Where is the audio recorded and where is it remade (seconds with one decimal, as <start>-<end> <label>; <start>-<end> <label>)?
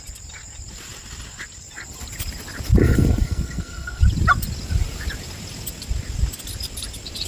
0.0-2.8 recorded; 2.8-4.0 remade; 4.0-7.3 recorded